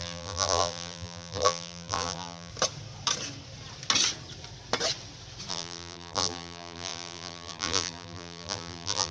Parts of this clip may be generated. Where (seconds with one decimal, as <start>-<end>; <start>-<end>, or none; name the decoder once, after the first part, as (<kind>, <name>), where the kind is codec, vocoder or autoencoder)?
0.0-2.5 (vocoder, BigVGAN v2); 5.5-9.1